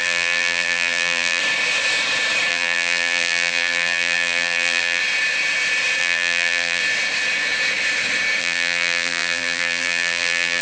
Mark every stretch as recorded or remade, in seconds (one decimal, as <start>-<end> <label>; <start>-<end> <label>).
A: 0.0-1.4 remade; 1.4-2.5 recorded; 2.5-5.0 remade; 5.0-6.0 recorded; 6.0-6.8 remade; 6.8-8.4 recorded; 8.4-10.6 remade